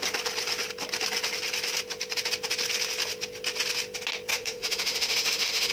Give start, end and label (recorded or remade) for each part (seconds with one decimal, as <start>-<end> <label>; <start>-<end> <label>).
0.0-4.3 recorded; 4.3-5.7 remade